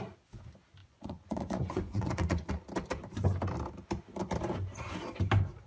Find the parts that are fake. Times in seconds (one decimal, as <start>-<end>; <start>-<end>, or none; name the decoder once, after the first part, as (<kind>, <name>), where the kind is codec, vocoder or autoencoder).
0.8-2.5 (vocoder, Vocos)

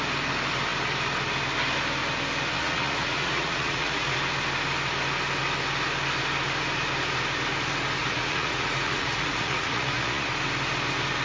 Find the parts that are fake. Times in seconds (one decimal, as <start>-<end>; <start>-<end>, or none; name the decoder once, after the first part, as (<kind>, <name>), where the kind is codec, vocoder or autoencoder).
2.5-4.1 (vocoder, Vocos); 8.0-10.3

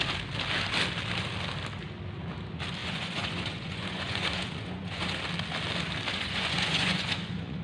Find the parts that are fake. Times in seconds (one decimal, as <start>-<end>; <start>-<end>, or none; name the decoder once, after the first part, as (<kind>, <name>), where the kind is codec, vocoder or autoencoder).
2.8-5.2 (vocoder, Vocos); 6.1-7.6

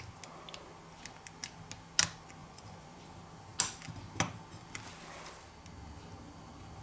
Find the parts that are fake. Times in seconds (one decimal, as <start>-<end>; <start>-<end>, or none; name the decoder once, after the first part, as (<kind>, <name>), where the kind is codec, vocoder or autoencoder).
2.4-3.0 (vocoder, Vocos)

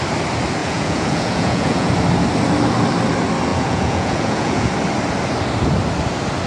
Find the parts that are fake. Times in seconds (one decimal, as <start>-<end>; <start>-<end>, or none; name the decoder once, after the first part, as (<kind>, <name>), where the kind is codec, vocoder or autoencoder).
0.6-1.9 (vocoder, Vocos); 3.5-4.7

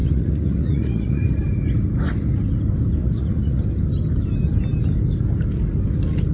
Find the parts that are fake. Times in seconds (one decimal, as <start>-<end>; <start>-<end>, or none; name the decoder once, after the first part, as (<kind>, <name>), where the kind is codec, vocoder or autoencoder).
0.0-1.3 (vocoder, Vocos); 3.0-3.6